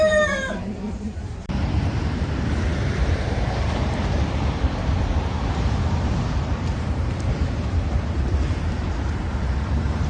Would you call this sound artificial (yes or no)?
yes